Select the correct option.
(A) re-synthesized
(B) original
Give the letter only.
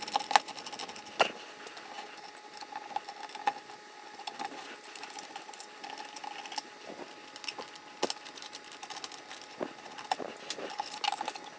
B